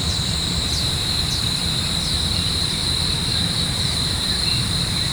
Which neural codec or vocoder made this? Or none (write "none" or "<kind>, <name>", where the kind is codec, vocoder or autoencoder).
vocoder, BigVGAN v2